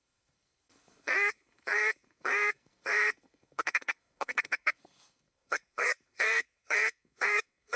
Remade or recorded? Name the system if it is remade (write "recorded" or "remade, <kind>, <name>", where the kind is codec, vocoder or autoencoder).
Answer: remade, codec, SNAC